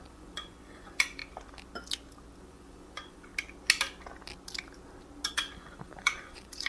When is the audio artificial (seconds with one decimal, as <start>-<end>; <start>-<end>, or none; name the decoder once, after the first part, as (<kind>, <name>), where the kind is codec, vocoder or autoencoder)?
0.0-1.2 (vocoder, Vocos); 2.4-3.3; 5.3-6.7